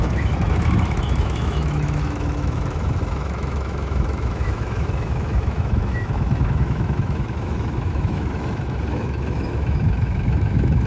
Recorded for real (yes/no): no